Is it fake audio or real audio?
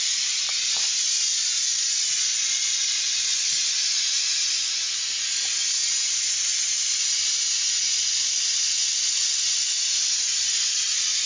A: real